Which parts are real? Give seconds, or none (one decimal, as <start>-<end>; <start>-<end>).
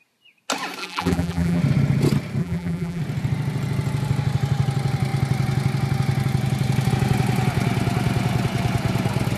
0.0-0.8; 1.6-2.4; 3.0-9.4